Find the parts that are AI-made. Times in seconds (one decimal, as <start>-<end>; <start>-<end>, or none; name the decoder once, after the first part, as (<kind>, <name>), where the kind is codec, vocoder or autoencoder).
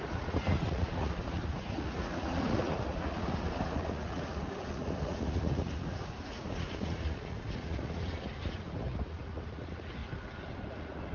0.0-10.0 (vocoder, Vocos); 10.7-11.1